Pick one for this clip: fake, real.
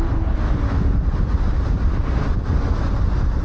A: real